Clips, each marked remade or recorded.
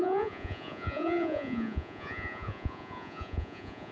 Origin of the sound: remade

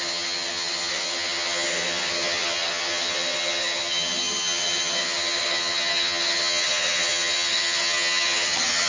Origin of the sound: remade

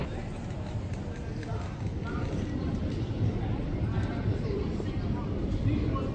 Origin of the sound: recorded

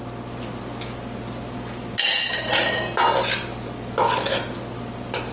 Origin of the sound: recorded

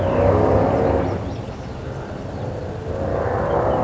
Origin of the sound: recorded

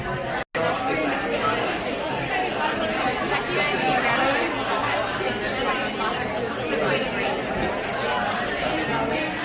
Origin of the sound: recorded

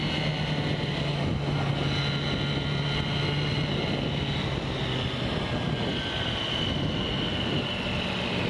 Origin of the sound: recorded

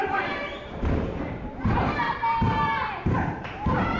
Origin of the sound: remade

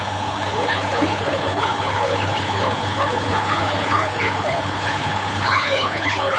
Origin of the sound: remade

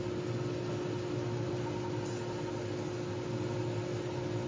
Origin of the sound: recorded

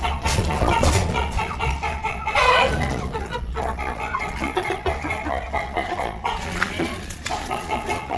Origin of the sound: remade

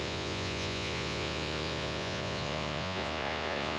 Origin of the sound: remade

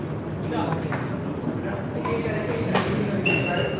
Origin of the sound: recorded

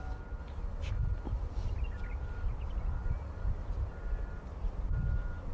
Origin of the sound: recorded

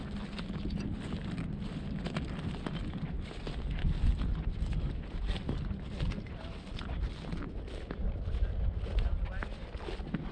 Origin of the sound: recorded